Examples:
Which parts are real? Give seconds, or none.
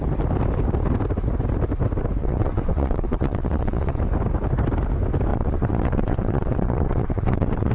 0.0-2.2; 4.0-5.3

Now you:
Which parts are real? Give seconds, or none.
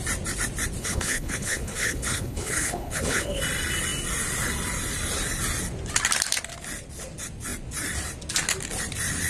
0.0-0.8; 3.4-9.3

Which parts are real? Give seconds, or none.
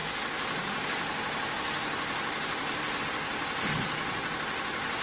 0.0-5.0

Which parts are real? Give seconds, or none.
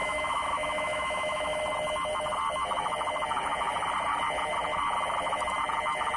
1.6-6.2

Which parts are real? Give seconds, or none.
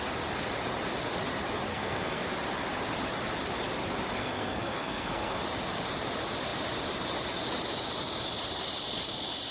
0.0-1.7; 2.2-4.2; 5.4-9.5